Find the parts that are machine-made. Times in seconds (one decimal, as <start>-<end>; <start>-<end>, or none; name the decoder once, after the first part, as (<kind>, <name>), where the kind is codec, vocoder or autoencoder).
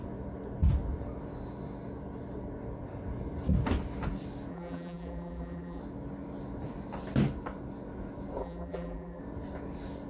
4.5-5.8 (vocoder, BigVGAN v2); 8.4-9.2